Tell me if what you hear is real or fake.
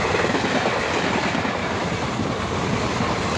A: real